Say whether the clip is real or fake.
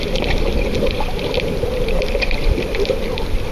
fake